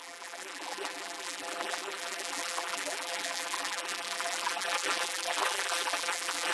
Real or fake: fake